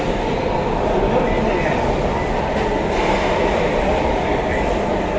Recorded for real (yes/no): yes